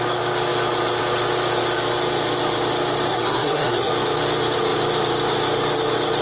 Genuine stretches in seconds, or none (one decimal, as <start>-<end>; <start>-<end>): 0.0-3.1; 3.9-6.2